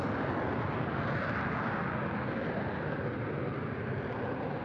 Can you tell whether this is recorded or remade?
recorded